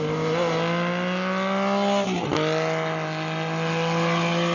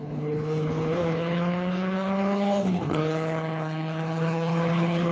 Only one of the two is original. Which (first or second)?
first